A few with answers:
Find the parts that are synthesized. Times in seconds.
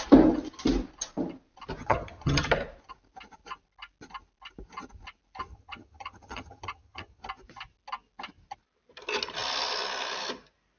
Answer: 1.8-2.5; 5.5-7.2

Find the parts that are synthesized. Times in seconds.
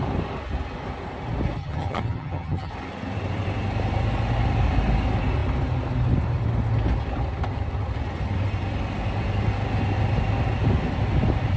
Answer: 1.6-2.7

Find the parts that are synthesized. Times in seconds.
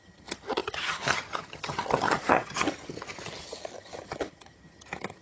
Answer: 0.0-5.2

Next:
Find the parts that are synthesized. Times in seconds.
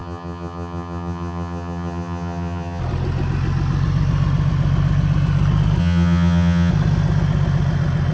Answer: 0.0-2.8; 5.8-6.7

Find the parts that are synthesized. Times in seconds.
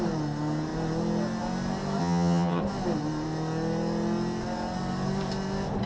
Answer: 2.0-2.6